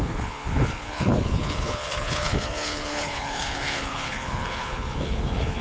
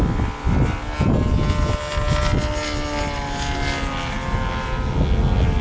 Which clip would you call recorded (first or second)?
second